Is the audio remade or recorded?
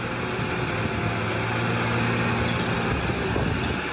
recorded